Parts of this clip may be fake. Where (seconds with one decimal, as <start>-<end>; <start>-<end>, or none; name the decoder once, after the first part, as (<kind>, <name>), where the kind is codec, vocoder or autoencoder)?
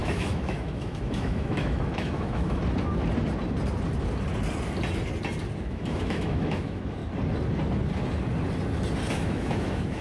0.0-2.6 (autoencoder, DAC-VAE); 5.6-7.0; 9.1-10.0